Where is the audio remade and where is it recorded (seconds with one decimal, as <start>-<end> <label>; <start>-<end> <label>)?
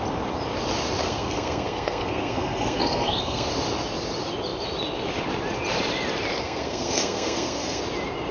0.0-1.0 recorded; 1.0-3.5 remade; 3.5-6.4 recorded; 6.4-7.8 remade; 7.8-8.3 recorded